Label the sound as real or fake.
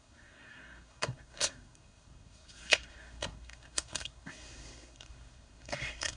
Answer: fake